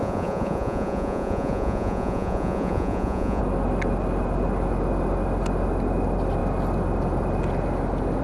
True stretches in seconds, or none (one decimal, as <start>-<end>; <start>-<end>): 3.4-8.2